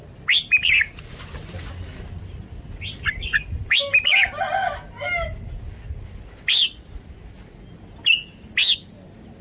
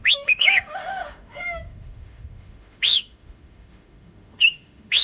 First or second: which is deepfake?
second